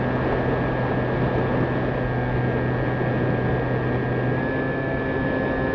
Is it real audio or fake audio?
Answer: real